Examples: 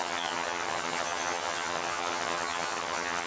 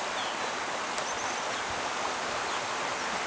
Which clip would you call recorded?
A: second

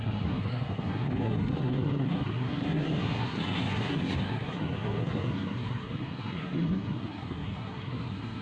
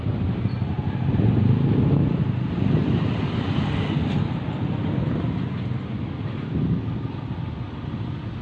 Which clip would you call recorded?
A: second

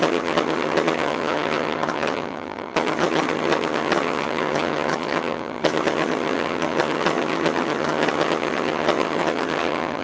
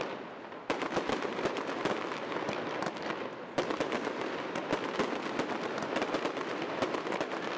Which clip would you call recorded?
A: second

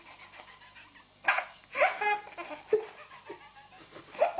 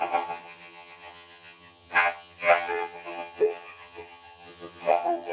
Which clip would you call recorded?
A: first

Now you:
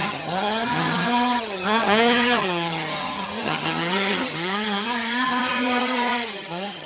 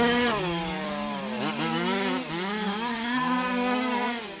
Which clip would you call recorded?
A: second